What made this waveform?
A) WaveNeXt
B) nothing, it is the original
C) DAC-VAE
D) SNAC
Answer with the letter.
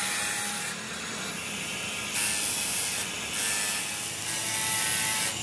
B